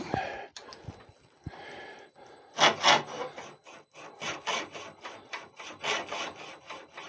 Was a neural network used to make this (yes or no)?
no